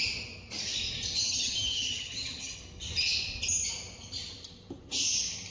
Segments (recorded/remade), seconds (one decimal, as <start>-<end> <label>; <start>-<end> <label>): 0.0-1.2 recorded; 1.2-2.6 remade; 2.6-5.5 recorded